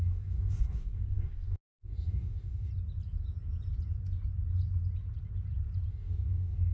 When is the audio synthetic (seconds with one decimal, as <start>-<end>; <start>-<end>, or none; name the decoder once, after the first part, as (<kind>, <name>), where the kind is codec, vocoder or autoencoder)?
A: 0.0-2.7 (codec, DAC); 5.9-6.7